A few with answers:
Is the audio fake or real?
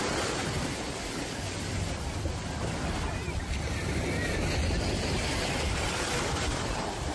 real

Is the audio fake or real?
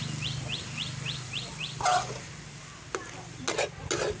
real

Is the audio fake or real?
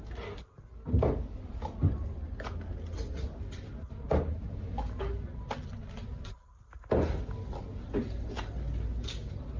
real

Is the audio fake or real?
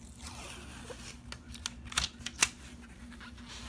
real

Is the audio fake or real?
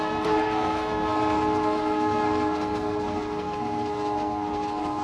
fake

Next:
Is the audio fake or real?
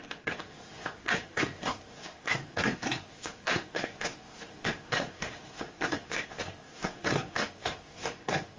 fake